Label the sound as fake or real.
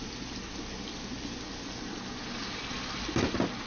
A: real